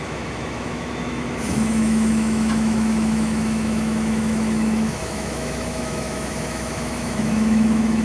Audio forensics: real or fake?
fake